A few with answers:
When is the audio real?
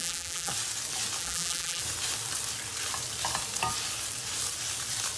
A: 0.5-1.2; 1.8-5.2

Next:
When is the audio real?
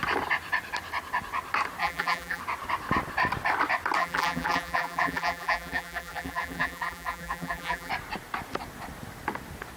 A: 0.0-1.8; 2.4-4.0; 7.9-9.8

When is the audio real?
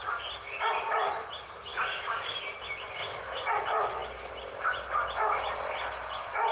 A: 0.0-1.7; 2.4-3.0; 3.5-6.5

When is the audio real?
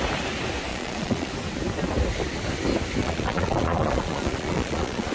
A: 0.0-0.7; 1.3-3.0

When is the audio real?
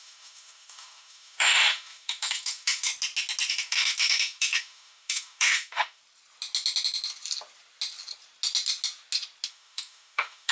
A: 2.9-3.5; 6.0-9.5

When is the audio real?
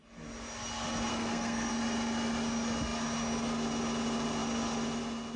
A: 0.0-1.1; 1.7-5.4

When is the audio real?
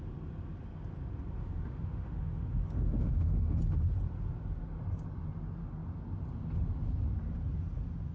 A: 0.0-1.4; 3.6-8.1